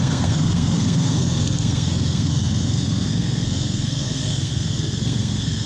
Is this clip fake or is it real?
fake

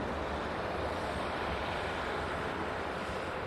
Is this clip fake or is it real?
real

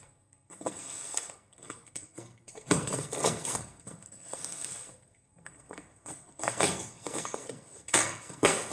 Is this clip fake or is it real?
fake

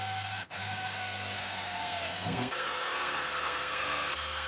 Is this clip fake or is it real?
fake